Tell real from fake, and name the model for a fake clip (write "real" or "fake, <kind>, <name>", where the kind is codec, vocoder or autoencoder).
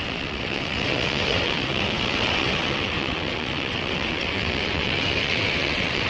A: fake, vocoder, WaveNeXt